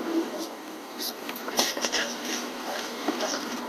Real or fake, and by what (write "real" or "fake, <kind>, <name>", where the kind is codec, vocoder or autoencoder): fake, codec, DAC